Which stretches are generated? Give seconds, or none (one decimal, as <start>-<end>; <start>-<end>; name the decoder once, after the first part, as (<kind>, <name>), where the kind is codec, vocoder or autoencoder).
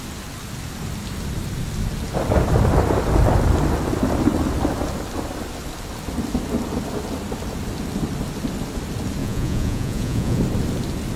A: 9.2-10.4 (vocoder, Vocos)